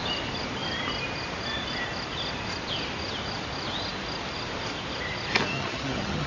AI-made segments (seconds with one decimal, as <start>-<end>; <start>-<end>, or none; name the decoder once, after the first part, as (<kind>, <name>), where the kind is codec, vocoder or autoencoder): 5.5-6.3 (vocoder, HiFi-GAN)